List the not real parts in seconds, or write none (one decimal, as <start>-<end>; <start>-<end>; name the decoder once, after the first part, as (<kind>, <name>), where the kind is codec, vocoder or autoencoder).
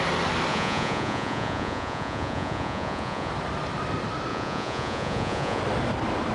0.5-3.3 (vocoder, Vocos); 4.3-5.6